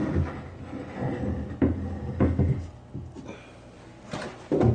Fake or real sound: real